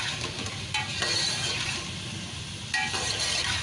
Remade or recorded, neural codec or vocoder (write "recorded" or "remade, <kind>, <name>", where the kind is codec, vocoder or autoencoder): recorded